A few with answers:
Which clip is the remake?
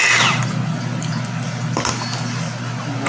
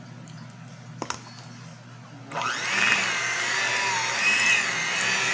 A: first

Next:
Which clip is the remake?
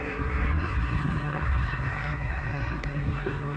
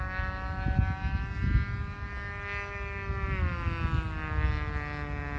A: first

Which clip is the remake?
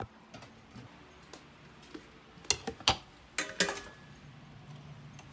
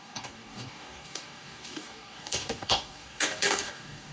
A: second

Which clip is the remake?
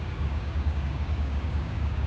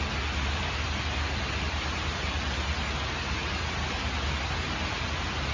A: first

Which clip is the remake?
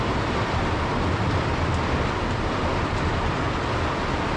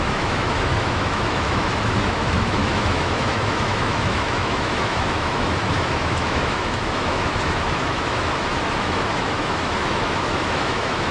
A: second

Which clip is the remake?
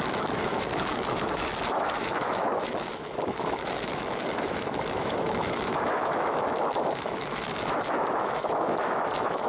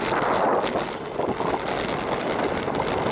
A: first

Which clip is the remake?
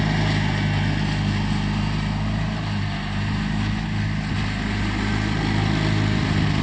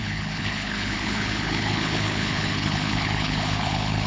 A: second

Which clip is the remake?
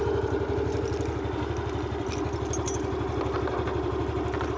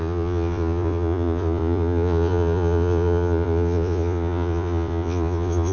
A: second